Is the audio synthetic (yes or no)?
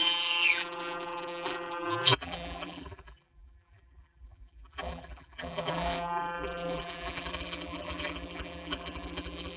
yes